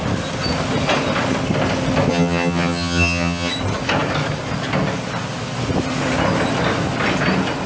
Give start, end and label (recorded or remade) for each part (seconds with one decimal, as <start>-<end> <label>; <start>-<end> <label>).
0.0-2.1 recorded; 2.1-3.5 remade; 3.5-7.7 recorded